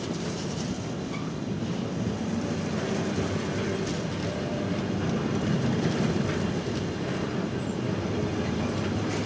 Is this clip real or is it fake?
real